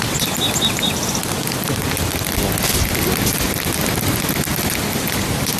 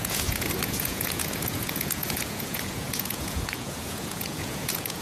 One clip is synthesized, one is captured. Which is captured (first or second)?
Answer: first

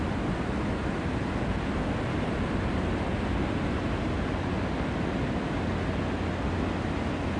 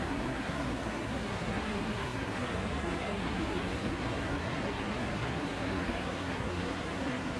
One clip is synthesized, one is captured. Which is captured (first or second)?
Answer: first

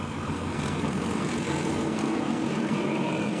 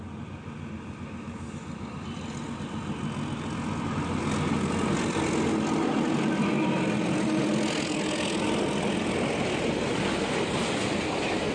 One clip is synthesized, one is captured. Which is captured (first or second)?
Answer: second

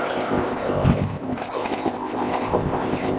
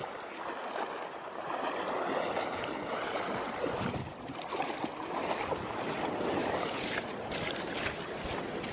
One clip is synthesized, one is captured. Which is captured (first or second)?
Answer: second